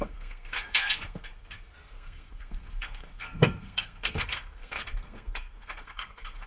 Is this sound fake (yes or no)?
yes